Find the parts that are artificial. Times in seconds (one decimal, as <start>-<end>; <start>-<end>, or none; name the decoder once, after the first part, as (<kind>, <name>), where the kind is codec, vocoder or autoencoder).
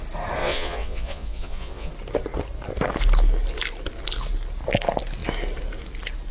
0.4-1.9 (vocoder, Vocos)